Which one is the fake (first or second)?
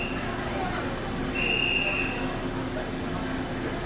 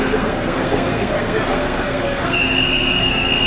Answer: second